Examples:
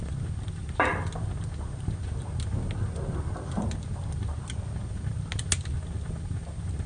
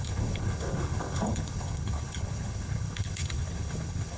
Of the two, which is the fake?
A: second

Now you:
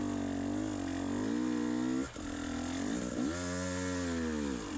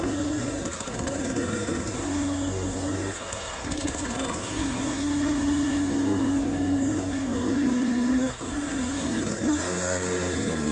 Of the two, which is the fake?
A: second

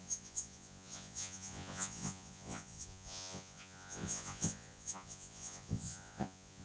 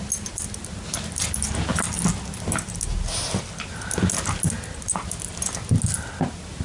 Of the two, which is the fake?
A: first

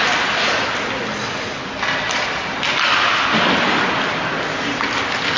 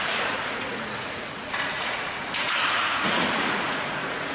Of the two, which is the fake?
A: second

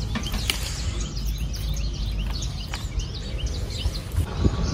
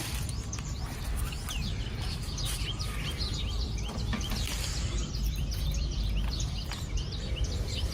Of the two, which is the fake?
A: second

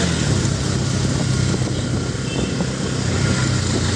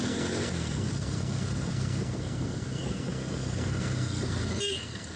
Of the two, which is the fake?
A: second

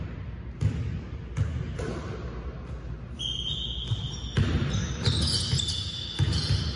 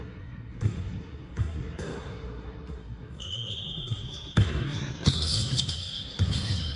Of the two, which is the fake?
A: second